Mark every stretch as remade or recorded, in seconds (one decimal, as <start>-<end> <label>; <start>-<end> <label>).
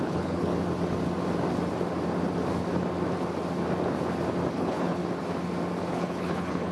0.0-0.5 remade; 0.5-4.5 recorded; 4.5-5.0 remade; 5.0-5.9 recorded; 5.9-6.7 remade